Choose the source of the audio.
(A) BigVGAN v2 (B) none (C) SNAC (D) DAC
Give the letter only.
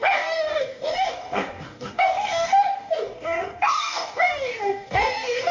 D